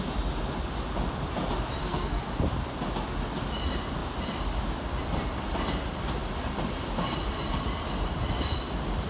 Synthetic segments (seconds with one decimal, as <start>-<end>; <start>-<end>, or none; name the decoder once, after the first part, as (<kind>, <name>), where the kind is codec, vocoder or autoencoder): 1.8-2.3 (codec, SNAC)